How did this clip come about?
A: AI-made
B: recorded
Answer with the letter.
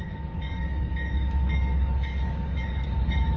A